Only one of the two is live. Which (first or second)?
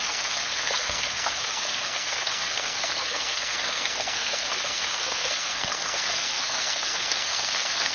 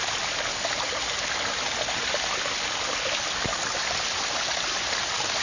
second